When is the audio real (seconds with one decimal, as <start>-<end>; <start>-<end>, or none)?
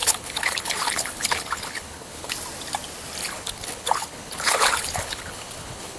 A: 2.3-3.2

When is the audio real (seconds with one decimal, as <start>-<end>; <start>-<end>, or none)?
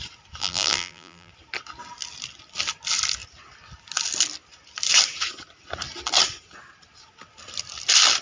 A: 0.0-0.4; 1.3-8.2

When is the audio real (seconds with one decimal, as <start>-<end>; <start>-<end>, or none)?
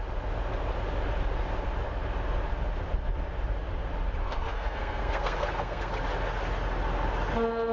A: 0.0-4.2; 5.9-7.7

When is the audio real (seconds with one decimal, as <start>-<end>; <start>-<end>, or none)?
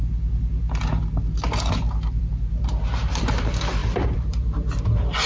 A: 0.0-2.2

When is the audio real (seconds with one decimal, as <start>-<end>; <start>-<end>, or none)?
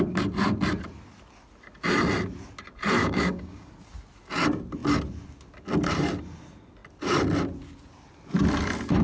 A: 0.0-3.0; 3.7-9.0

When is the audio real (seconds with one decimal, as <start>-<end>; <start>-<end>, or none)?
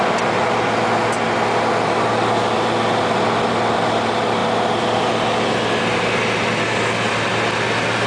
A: 0.0-8.1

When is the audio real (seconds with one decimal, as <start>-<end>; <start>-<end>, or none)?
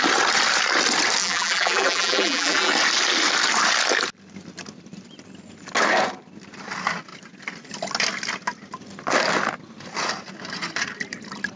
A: 0.0-1.2; 2.7-11.6